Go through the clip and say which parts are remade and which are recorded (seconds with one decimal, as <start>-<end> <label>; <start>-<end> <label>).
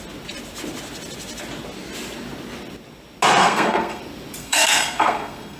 0.0-3.4 recorded; 3.4-4.0 remade; 4.0-4.4 recorded; 4.4-5.6 remade